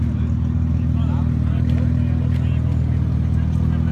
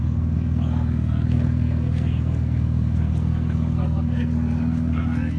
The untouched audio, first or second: first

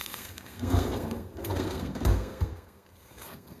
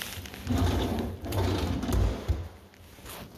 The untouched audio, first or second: second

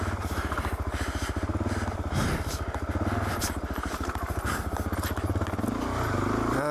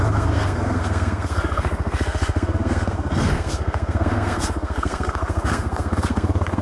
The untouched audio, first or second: first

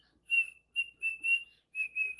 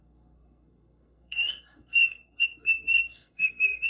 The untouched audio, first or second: first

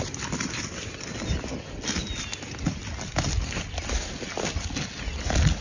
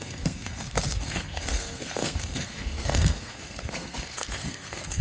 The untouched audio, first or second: first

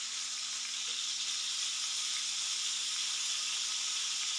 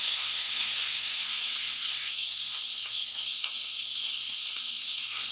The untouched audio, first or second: first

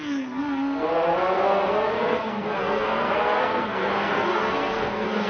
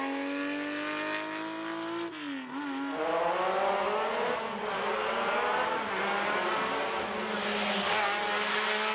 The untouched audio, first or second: second